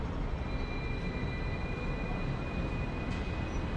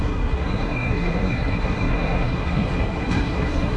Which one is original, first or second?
first